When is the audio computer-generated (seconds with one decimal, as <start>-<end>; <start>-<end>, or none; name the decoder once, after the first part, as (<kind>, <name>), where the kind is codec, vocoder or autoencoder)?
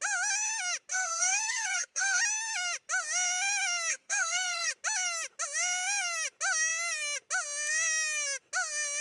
0.9-2.2 (codec, SNAC); 3.9-4.7